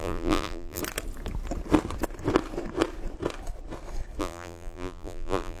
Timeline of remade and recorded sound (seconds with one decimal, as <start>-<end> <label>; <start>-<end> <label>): 0.0-0.8 remade; 0.8-4.2 recorded; 4.2-5.6 remade